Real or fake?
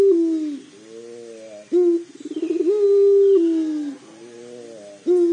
real